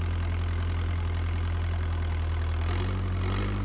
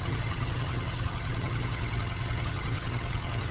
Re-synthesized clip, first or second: second